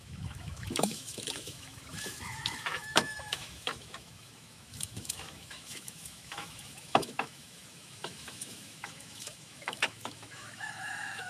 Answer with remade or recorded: remade